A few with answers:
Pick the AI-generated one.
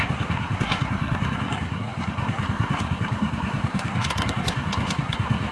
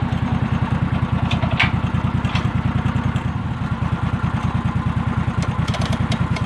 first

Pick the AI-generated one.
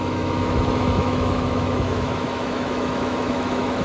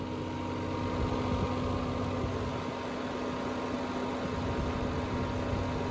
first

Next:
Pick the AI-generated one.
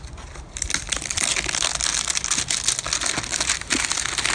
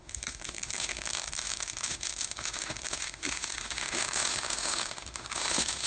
second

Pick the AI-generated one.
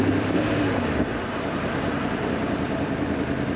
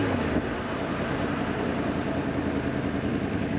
first